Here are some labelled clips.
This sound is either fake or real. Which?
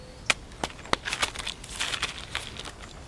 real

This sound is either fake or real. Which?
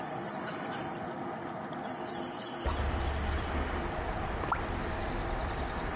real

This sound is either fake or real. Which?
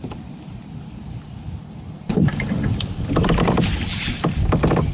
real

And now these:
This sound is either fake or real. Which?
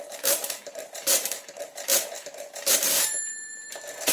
fake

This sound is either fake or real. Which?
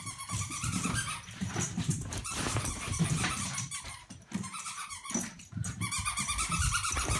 fake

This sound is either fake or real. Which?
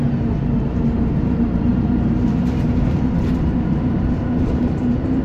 fake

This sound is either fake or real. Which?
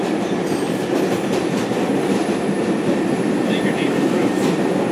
fake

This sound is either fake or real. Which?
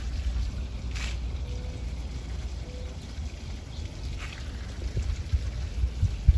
real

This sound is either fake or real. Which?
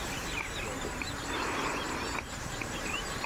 fake